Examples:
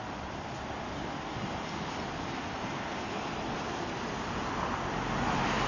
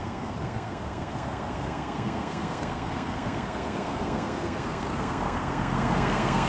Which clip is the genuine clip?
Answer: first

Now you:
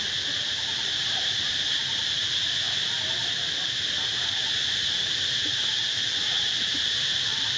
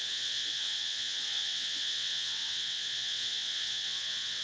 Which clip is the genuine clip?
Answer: first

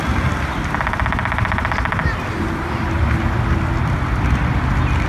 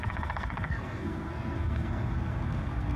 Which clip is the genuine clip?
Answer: first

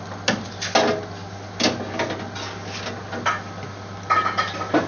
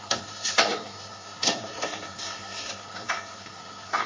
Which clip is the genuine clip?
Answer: first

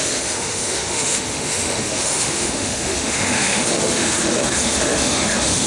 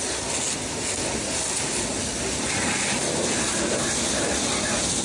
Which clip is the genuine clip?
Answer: second